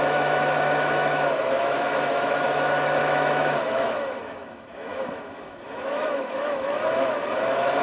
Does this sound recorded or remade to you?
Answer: remade